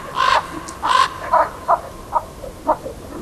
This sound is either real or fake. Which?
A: real